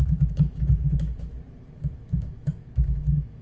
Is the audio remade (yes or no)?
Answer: yes